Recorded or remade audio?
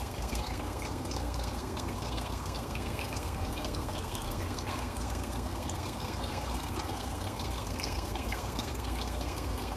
remade